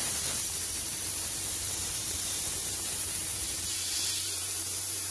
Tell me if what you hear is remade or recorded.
remade